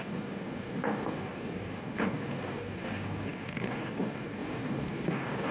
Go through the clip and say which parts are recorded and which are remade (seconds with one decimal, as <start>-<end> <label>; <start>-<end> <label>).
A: 0.0-5.5 remade